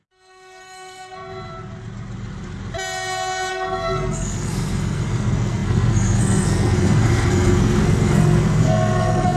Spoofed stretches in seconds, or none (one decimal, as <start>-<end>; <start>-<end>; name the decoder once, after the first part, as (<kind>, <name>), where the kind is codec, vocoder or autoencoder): 0.0-1.2 (codec, SNAC); 3.5-9.4